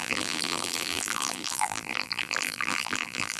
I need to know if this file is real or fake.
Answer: fake